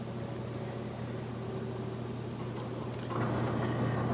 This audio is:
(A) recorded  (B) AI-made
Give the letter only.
A